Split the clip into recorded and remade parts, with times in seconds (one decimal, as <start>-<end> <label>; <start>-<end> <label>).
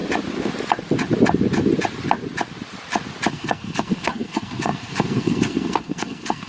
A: 0.0-3.3 recorded; 3.3-6.5 remade